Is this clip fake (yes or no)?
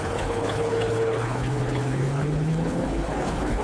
yes